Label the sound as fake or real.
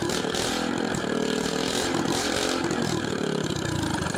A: real